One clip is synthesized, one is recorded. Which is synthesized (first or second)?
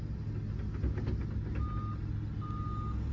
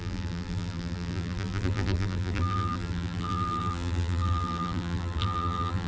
second